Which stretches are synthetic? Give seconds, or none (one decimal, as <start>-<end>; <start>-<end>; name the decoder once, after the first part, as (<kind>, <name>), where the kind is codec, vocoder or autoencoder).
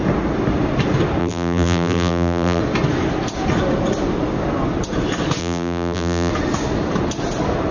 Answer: 1.2-2.6 (vocoder, BigVGAN v2); 5.4-6.3